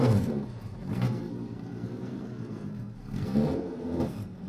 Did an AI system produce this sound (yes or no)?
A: yes